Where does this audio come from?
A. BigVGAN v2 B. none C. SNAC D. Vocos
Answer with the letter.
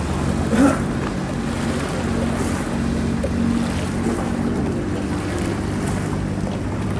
B